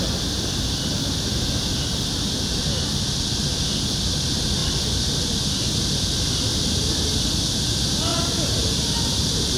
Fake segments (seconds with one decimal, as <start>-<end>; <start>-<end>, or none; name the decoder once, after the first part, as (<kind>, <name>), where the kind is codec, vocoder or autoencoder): 6.5-7.6 (vocoder, BigVGAN v2); 8.1-9.6